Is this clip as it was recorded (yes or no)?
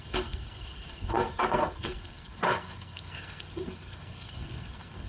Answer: no